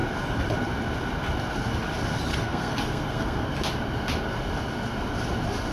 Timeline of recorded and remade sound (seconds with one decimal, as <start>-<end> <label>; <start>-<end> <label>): 0.0-2.3 recorded; 2.3-3.5 remade; 3.5-5.7 recorded

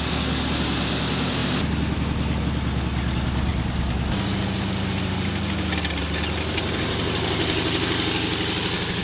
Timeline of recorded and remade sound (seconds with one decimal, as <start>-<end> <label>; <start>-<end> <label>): 0.0-9.0 recorded

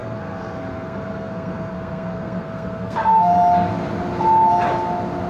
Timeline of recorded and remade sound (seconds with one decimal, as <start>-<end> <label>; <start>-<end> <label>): 0.0-3.3 remade; 3.3-5.3 recorded